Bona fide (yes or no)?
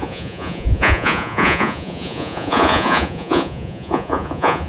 no